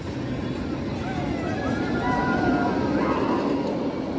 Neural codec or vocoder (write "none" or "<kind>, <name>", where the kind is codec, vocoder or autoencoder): none